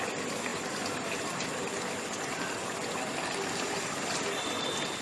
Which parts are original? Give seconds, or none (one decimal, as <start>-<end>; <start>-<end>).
0.0-5.0